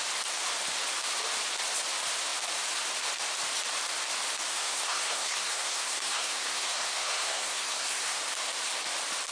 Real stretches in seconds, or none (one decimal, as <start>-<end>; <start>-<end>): 0.0-4.5; 8.2-9.3